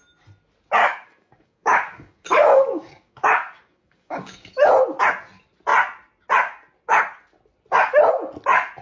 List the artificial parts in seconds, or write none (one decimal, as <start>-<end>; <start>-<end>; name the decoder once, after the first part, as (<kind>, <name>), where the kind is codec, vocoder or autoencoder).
0.8-4.7 (codec, DAC)